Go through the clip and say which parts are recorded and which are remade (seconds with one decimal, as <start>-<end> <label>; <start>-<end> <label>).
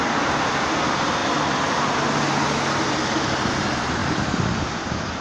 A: 0.0-4.0 recorded; 4.0-4.5 remade; 4.5-5.2 recorded